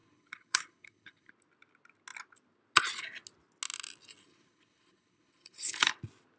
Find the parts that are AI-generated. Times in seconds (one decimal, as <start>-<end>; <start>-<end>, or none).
0.0-1.3; 4.2-5.9